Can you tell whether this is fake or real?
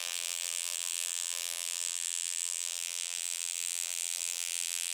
fake